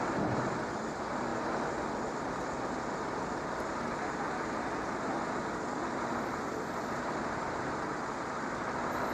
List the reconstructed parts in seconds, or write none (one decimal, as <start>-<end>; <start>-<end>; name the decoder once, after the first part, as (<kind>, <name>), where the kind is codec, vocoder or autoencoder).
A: none